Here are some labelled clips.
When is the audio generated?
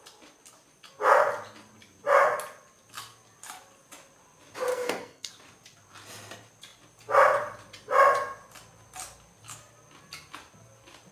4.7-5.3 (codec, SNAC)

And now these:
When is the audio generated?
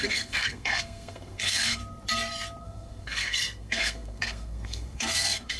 0.0-1.8 (codec, SNAC); 2.6-5.6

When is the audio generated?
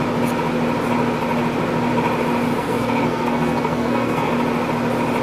2.6-4.3 (codec, SNAC)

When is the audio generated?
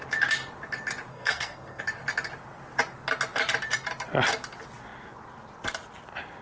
1.1-1.8 (codec, SNAC)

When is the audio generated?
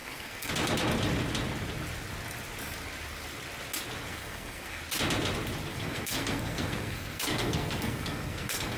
0.0-0.5 (codec, SNAC); 4.1-4.8; 5.7-8.8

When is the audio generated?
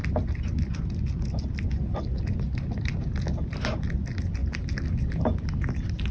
none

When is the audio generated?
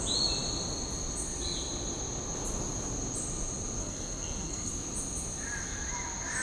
3.8-4.7 (codec, SNAC)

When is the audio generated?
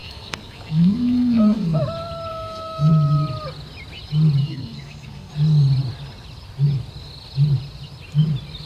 0.0-1.8 (codec, SNAC); 2.3-2.9; 4.4-5.3